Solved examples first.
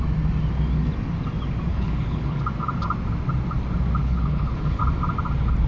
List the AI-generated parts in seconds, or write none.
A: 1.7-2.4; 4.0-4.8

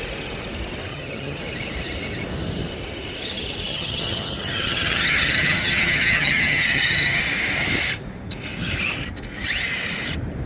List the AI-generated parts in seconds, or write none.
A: 0.9-1.4; 3.7-7.2

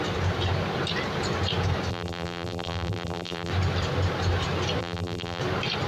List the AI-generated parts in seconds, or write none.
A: 1.9-3.5; 4.8-5.4

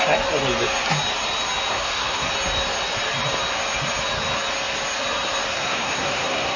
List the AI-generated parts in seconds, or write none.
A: 1.7-2.3; 5.5-6.6